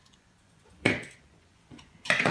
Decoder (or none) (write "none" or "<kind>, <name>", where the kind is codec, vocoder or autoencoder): vocoder, Vocos